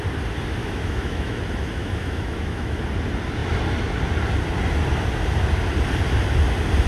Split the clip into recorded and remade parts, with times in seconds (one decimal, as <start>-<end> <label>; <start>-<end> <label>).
0.0-0.6 recorded; 0.6-1.4 remade; 1.4-1.8 recorded; 1.8-2.8 remade; 2.8-6.9 recorded